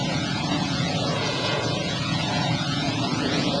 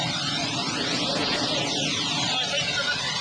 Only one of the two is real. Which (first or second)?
second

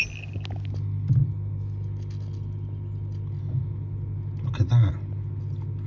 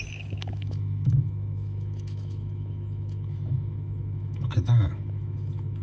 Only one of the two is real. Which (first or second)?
first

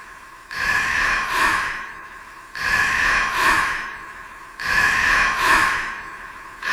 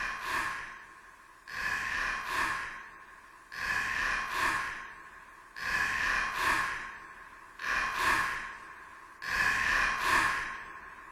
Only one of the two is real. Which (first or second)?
second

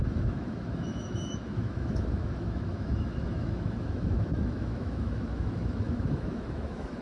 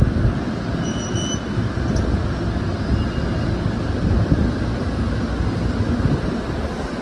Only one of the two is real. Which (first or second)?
second